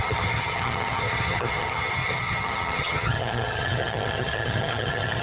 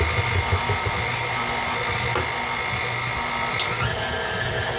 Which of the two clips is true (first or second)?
second